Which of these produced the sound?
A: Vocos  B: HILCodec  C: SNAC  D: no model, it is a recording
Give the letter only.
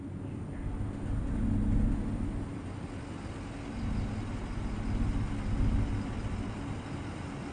D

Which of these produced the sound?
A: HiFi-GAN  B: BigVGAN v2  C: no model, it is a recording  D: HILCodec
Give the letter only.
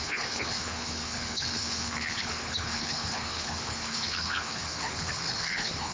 D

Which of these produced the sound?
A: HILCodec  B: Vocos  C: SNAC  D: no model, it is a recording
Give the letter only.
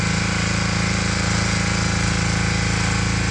D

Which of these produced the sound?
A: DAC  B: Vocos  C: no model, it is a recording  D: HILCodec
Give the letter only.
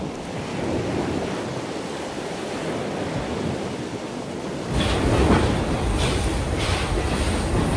C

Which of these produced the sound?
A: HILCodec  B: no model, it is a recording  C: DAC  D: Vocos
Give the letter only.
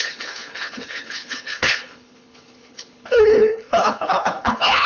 A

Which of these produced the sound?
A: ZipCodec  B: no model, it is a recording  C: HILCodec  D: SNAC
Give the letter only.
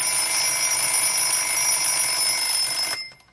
B